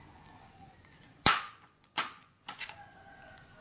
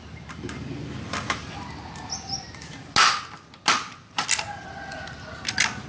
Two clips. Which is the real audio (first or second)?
second